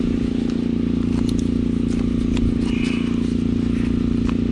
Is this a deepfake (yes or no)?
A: no